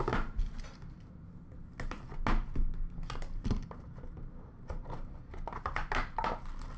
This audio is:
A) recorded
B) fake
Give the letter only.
A